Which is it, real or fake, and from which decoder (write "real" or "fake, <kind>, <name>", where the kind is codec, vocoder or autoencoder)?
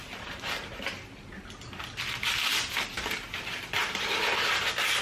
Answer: real